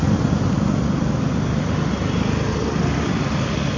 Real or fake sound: real